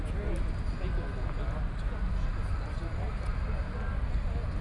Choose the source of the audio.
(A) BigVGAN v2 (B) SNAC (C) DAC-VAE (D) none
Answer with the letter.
D